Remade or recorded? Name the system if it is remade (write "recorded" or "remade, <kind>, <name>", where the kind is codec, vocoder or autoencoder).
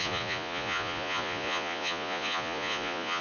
remade, vocoder, Vocos